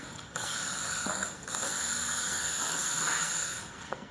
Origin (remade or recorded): remade